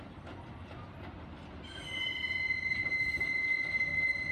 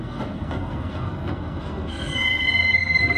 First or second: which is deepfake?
second